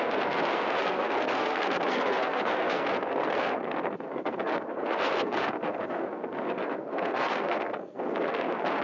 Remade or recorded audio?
remade